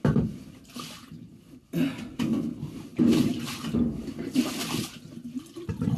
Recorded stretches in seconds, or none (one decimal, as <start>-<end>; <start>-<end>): 0.0-6.0